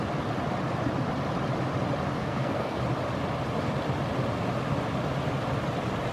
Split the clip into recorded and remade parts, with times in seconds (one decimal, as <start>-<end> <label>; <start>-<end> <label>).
0.0-2.2 recorded; 2.2-2.8 remade; 2.8-6.1 recorded